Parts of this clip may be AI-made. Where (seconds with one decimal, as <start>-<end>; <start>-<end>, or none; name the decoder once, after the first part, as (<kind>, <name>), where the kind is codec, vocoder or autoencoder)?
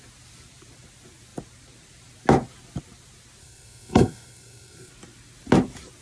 3.4-4.9 (codec, SNAC)